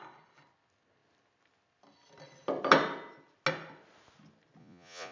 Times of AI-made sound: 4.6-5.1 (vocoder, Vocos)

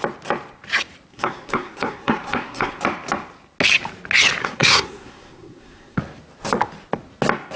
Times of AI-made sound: 1.1-2.8 (codec, SNAC); 4.4-6.0

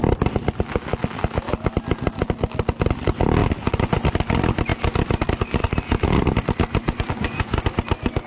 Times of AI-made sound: 6.8-7.6 (vocoder, Vocos)

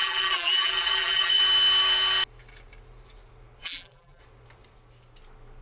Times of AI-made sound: 0.0-1.4 (vocoder, BigVGAN v2); 3.6-4.2

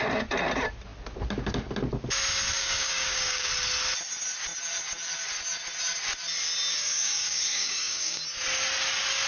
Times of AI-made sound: 2.6-3.5 (codec, DAC); 6.7-8.2

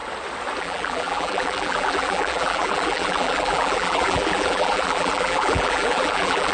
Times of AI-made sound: 0.6-6.5 (vocoder, BigVGAN v2)

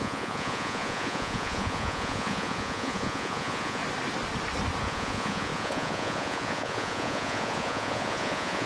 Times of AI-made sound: 0.0-3.8 (vocoder, Vocos); 4.8-8.7

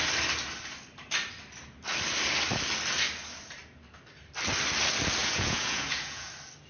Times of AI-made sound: 5.2-6.3 (vocoder, Vocos)